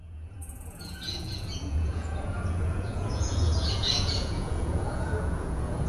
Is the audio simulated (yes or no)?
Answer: yes